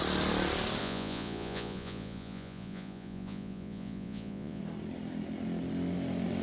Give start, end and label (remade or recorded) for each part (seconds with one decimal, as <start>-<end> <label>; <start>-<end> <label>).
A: 0.0-0.8 recorded; 0.8-4.6 remade; 4.6-6.4 recorded